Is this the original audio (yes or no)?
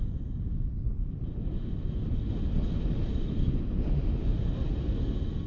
yes